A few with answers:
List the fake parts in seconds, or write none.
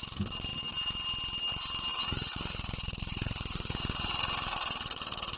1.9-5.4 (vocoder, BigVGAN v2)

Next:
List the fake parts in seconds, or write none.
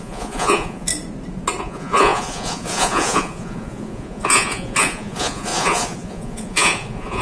0.0-0.9 (vocoder, Vocos); 1.6-7.2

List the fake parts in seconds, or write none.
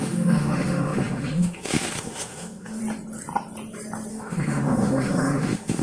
0.0-2.8 (autoencoder, DAC-VAE); 4.1-5.8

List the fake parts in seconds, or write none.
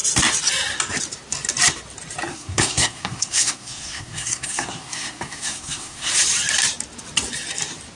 2.3-6.1 (codec, SNAC)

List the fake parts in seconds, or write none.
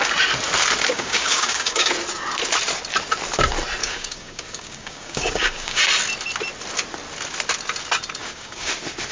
0.9-1.9 (codec, DAC); 3.8-5.8; 8.2-8.7